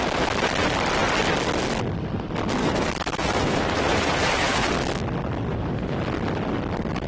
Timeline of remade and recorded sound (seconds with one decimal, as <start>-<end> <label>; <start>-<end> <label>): 0.0-2.6 recorded; 2.6-4.7 remade; 4.7-5.5 recorded; 5.5-6.0 remade; 6.0-7.1 recorded